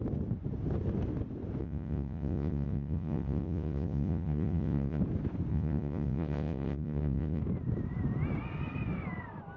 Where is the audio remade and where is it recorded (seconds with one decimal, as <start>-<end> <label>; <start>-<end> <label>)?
0.0-1.6 recorded; 1.6-5.0 remade; 5.0-5.5 recorded; 5.5-7.4 remade; 7.4-9.6 recorded